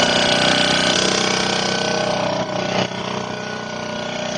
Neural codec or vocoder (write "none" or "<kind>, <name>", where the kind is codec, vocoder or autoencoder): none